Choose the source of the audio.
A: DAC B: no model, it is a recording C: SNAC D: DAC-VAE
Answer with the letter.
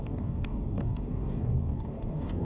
A